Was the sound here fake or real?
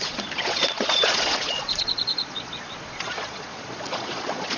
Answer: fake